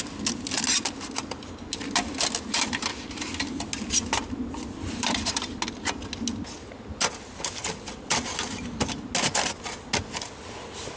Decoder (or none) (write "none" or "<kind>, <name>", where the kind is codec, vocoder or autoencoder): none